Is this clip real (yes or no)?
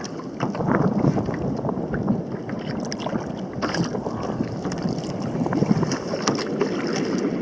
yes